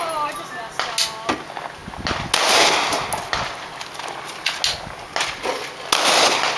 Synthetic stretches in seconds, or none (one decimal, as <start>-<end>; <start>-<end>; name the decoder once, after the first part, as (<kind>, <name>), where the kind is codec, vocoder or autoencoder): none